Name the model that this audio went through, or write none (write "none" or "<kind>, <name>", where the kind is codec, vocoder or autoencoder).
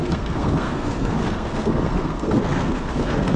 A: codec, SNAC